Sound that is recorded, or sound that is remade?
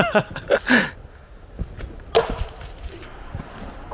recorded